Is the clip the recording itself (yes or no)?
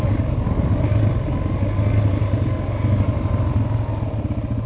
yes